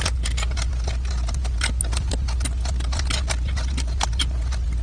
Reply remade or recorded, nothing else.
recorded